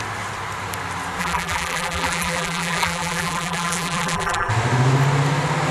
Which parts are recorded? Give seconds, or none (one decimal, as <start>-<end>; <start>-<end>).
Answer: 0.0-1.2; 4.5-5.7